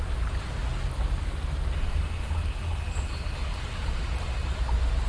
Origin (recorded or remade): recorded